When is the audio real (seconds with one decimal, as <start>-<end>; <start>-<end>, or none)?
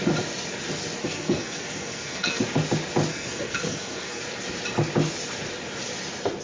0.0-1.0; 2.4-3.1; 4.2-6.4